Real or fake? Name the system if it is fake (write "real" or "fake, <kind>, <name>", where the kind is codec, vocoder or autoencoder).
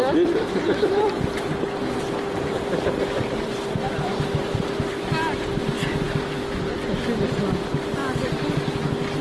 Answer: real